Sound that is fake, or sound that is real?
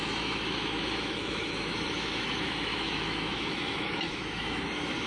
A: fake